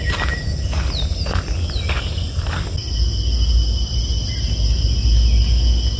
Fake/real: real